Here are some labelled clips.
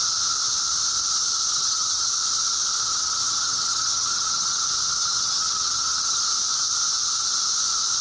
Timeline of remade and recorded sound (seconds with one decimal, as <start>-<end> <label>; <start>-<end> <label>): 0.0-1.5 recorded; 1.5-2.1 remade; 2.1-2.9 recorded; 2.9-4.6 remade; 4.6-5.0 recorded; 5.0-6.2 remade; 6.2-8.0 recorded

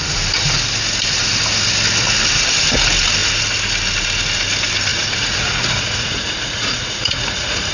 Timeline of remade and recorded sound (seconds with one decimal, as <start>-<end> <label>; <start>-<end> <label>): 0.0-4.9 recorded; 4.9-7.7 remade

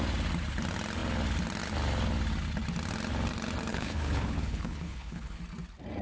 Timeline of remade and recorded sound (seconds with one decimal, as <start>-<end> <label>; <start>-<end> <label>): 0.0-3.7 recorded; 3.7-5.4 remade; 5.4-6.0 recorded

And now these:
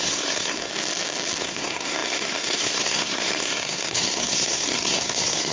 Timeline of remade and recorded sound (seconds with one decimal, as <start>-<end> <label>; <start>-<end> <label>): 0.0-0.7 remade; 0.7-1.4 recorded; 1.4-5.5 remade

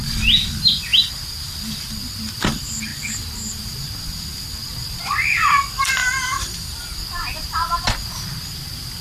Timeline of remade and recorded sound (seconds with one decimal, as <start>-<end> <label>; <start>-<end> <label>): 0.0-6.0 recorded; 6.0-6.9 remade; 6.9-9.0 recorded

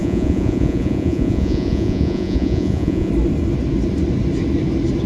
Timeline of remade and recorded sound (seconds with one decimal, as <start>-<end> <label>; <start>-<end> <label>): 0.0-3.1 remade; 3.1-5.1 recorded

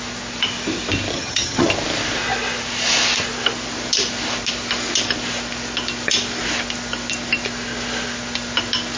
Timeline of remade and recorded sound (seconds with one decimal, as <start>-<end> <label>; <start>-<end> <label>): 0.0-1.1 recorded; 1.1-1.7 remade; 1.7-9.0 recorded